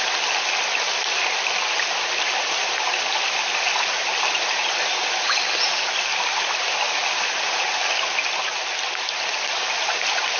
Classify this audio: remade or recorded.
recorded